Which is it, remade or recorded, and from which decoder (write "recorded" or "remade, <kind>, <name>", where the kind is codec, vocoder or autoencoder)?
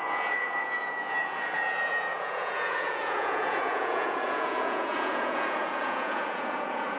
remade, vocoder, Vocos